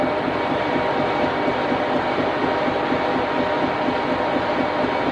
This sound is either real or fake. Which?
real